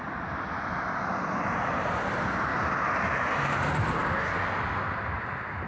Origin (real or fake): real